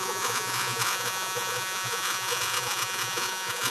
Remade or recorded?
remade